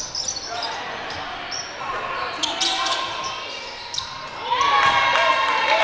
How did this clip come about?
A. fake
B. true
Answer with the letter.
B